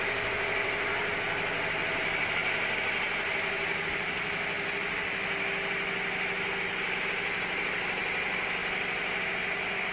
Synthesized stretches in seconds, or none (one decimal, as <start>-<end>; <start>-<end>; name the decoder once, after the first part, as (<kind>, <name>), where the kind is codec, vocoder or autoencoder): none